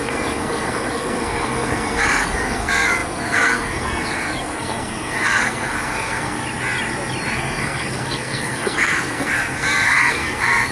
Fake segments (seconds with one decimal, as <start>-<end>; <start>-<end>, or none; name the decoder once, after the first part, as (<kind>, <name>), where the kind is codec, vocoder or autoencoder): 0.0-6.4 (codec, SNAC); 7.3-10.7

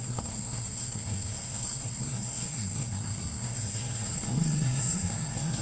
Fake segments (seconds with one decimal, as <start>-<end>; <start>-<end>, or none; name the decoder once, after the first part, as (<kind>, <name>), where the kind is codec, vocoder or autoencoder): 0.0-5.6 (codec, SNAC)

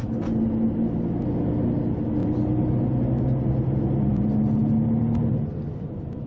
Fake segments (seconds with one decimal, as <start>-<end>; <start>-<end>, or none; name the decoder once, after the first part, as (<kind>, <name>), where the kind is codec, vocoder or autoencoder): none

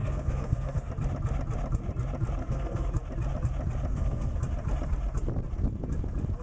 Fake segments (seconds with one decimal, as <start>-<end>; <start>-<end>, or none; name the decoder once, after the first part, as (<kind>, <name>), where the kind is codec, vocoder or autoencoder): 0.0-0.9 (codec, SNAC); 2.4-2.9; 3.9-4.4